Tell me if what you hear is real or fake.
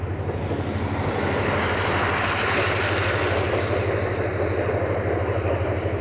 real